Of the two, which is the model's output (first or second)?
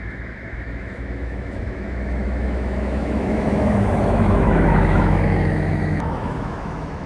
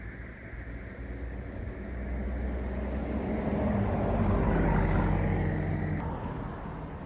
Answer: first